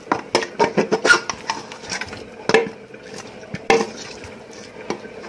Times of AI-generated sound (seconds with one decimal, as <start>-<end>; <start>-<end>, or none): none